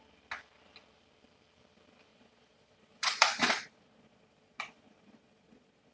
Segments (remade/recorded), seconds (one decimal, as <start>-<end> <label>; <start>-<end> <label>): 0.0-2.1 recorded; 2.1-5.9 remade

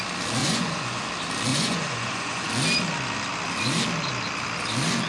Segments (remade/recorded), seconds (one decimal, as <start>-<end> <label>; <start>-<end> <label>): 0.0-0.4 recorded; 0.4-1.1 remade; 1.1-1.5 recorded; 1.5-2.5 remade; 2.5-5.1 recorded

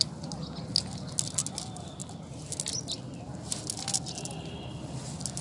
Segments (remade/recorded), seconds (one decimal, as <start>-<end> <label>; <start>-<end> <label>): 0.0-5.4 recorded

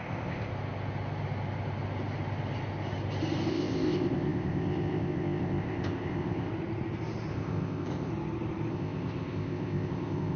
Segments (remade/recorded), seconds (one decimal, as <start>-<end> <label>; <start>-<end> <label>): 0.0-0.5 remade; 0.5-3.5 recorded; 3.5-6.5 remade; 6.5-7.3 recorded; 7.3-8.1 remade; 8.1-8.7 recorded; 8.7-10.4 remade

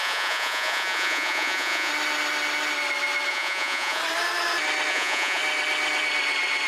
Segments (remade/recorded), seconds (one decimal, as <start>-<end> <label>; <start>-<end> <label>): 0.0-1.9 remade; 1.9-3.3 recorded; 3.3-4.0 remade; 4.0-4.9 recorded; 4.9-5.4 remade; 5.4-6.7 recorded

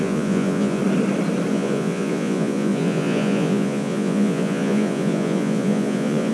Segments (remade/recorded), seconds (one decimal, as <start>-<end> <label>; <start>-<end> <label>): 0.0-0.8 remade; 0.8-1.5 recorded; 1.5-6.3 remade

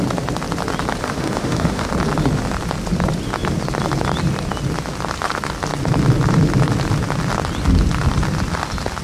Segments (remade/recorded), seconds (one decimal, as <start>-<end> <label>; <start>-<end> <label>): 0.0-1.0 recorded; 1.0-1.9 remade; 1.9-9.0 recorded